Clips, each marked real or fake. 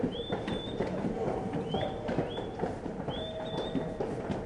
fake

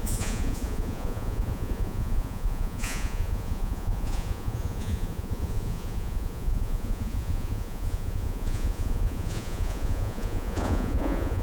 fake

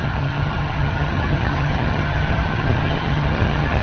fake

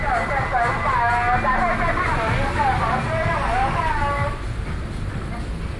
real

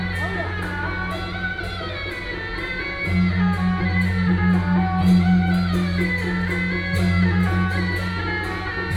real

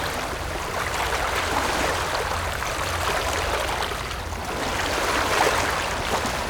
real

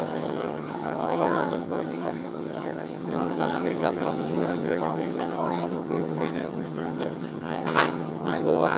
fake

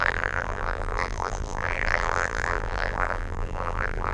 fake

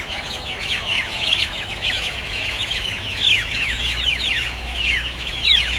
fake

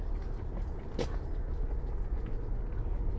real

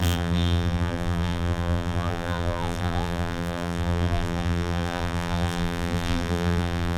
fake